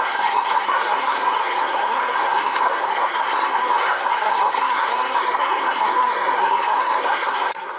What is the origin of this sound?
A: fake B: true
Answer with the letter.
A